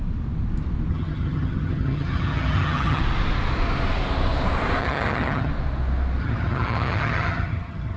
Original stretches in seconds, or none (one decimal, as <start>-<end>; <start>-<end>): 0.0-0.9; 3.0-4.8; 5.5-6.2